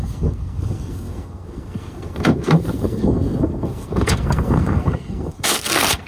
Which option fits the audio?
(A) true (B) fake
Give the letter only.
B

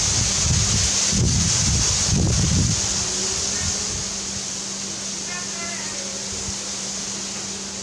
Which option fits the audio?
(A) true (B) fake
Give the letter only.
A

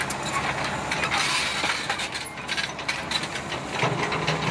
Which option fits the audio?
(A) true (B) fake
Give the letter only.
A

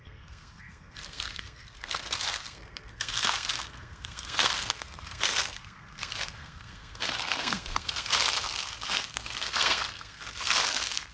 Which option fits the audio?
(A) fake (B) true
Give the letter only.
A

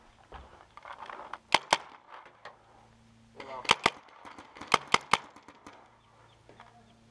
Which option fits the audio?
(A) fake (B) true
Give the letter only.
B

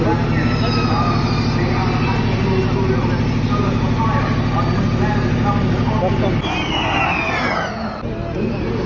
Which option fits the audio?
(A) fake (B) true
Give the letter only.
B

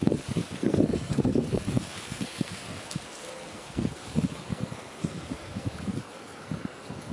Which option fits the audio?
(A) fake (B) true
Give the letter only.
A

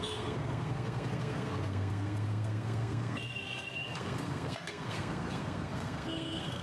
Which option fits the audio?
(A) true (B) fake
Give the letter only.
B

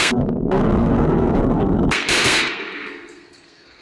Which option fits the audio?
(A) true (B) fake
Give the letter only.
B